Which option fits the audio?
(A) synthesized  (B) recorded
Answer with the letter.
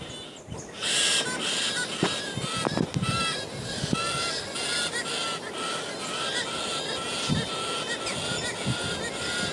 B